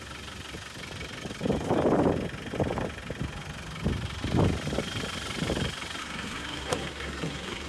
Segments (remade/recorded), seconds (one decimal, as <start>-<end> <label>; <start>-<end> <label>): 0.0-6.0 recorded; 6.0-7.7 remade